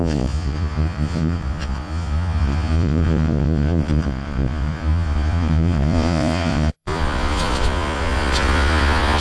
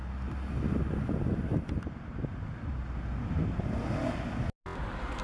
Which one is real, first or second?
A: second